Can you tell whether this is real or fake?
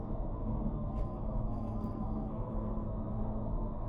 fake